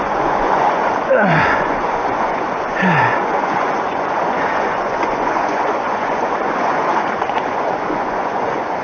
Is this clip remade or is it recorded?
remade